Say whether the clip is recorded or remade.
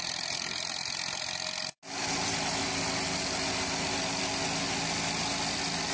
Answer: recorded